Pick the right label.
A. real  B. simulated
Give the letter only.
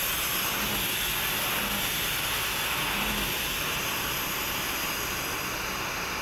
A